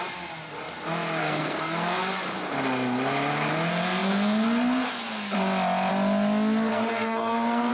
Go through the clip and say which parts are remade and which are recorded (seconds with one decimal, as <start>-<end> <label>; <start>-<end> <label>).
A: 0.0-1.2 recorded; 1.2-2.0 remade; 2.0-6.7 recorded; 6.7-7.7 remade